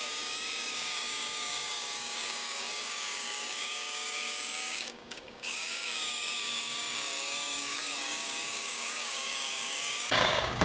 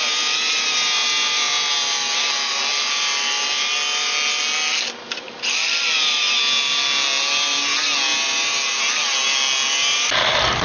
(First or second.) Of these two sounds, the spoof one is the first